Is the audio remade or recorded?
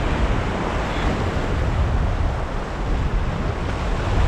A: recorded